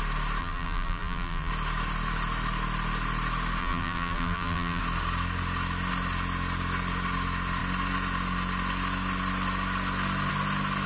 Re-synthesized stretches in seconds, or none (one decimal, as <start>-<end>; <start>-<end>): 0.4-1.5; 3.6-4.8